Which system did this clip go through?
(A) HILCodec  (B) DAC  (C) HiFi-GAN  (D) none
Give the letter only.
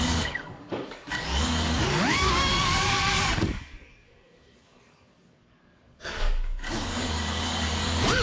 B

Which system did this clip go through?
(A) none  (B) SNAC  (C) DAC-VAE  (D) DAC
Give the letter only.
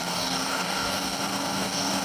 D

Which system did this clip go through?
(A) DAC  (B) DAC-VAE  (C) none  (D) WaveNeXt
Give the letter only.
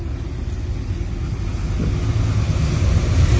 C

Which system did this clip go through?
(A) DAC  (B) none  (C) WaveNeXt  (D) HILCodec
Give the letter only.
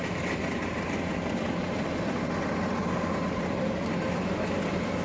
B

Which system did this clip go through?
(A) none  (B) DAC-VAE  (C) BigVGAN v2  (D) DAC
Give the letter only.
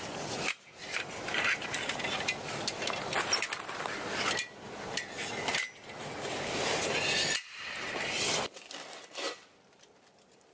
A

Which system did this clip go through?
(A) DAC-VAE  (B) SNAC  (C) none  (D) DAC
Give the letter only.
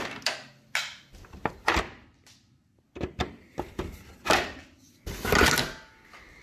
C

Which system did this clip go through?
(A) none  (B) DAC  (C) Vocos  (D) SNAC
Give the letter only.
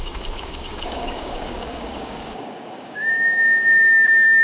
B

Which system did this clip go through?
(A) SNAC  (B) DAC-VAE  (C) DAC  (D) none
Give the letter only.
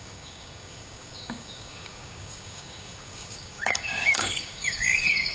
C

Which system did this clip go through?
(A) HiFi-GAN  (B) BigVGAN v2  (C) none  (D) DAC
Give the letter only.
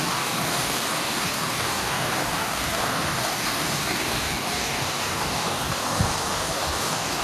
D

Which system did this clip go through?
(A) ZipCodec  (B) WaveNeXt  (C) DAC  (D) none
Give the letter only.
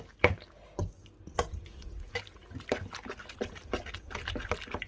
D